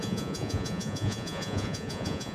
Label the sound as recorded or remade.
remade